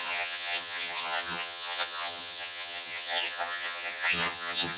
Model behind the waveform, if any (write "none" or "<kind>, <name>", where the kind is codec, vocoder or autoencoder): vocoder, HiFi-GAN